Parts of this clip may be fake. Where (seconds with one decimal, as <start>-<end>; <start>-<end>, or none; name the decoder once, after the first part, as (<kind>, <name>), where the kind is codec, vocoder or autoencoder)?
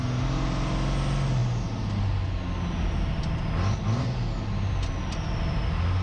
none